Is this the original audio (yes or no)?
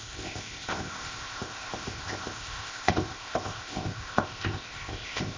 no